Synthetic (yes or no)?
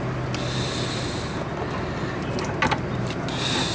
no